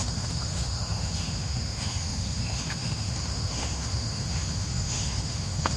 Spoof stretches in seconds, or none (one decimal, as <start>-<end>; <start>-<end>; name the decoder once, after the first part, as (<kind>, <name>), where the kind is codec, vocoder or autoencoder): 0.0-5.8 (autoencoder, DAC-VAE)